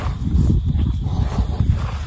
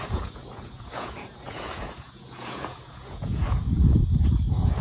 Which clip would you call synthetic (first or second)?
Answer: second